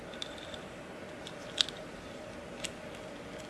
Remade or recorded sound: recorded